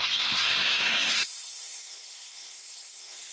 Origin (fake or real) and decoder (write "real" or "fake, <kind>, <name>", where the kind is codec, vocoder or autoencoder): fake, codec, SNAC